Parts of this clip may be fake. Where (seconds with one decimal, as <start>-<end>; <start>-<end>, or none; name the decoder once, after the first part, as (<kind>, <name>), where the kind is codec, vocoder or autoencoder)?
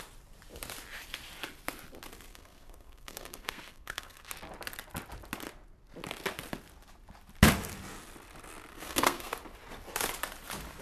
2.3-4.3 (codec, SNAC); 8.7-9.3